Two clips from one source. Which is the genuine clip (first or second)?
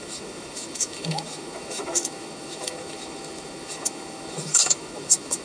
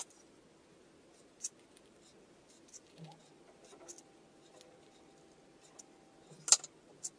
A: second